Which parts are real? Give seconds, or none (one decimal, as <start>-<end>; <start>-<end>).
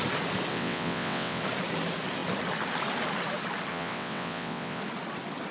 0.0-0.5; 1.4-3.7; 4.8-5.5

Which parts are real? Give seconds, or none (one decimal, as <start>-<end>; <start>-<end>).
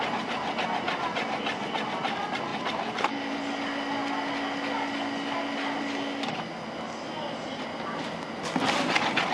0.0-9.3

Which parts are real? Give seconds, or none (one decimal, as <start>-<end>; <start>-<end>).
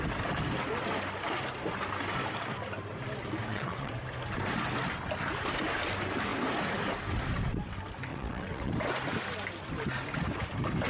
0.0-3.5; 4.0-8.1; 8.7-10.9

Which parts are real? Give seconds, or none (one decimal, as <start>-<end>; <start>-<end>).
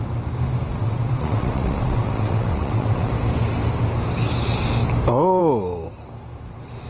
0.0-0.7; 3.1-6.9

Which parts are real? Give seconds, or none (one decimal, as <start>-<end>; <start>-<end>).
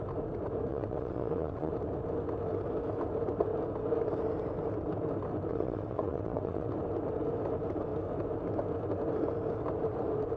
0.0-0.7; 1.7-5.5; 6.7-10.4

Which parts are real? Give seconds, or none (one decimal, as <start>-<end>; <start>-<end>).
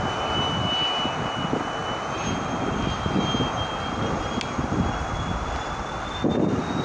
0.0-6.8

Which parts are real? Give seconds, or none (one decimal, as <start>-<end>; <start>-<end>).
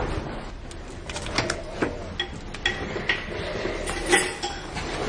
0.0-5.1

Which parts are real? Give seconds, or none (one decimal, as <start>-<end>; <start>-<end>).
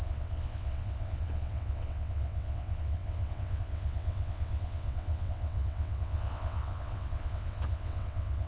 none